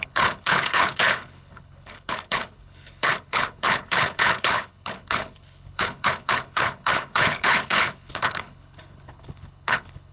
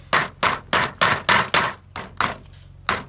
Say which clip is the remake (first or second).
first